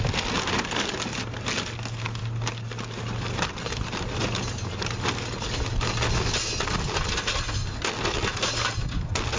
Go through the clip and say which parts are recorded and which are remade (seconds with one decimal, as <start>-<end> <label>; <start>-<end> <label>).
0.0-9.4 recorded